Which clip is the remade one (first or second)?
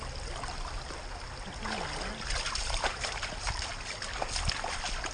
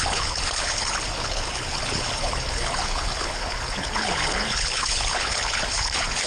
second